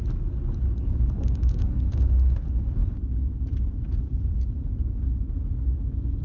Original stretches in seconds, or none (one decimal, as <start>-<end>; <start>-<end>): 0.0-1.4; 2.4-6.2